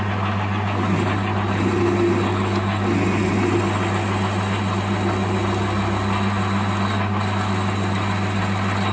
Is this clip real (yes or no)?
yes